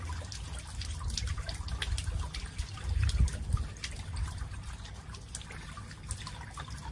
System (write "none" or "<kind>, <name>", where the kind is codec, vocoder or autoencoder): none